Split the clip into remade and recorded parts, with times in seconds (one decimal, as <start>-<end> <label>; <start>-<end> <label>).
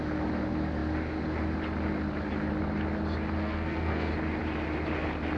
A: 0.0-3.4 recorded; 3.4-4.1 remade; 4.1-5.4 recorded